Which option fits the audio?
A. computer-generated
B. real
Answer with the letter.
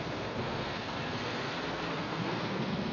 A